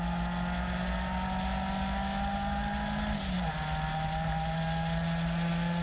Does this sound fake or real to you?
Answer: real